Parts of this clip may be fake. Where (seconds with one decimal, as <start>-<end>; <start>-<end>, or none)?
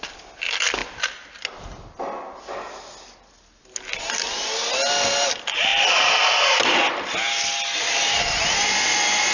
none